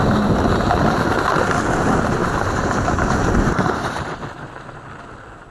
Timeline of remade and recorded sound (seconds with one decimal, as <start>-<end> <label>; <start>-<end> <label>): 0.0-2.2 recorded; 2.2-4.2 remade; 4.2-5.5 recorded